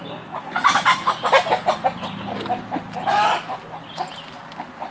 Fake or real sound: real